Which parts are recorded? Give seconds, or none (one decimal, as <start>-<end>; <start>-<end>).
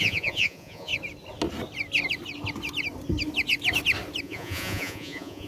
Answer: 0.9-4.2